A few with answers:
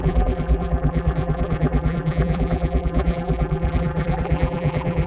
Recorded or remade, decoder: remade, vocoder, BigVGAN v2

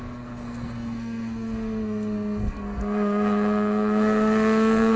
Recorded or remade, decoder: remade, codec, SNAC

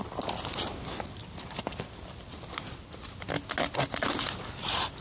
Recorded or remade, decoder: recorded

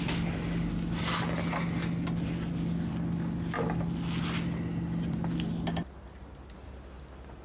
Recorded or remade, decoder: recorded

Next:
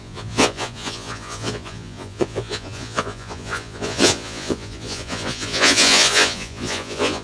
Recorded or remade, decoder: remade, vocoder, Vocos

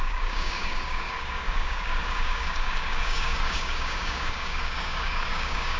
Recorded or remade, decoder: remade, codec, DAC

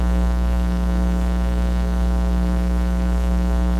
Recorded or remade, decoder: remade, codec, SNAC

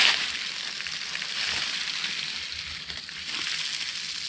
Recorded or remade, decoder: recorded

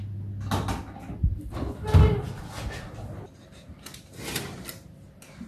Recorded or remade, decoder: recorded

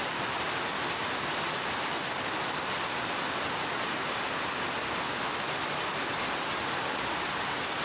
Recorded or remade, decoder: recorded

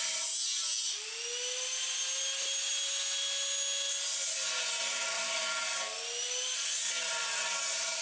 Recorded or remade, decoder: recorded